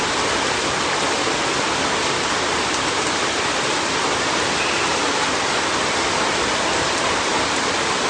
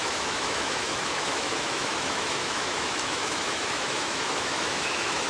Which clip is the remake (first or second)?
second